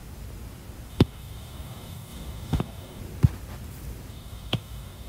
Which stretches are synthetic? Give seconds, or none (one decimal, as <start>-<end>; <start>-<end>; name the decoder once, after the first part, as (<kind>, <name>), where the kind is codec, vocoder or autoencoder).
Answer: 0.9-3.0 (codec, DAC); 4.1-5.1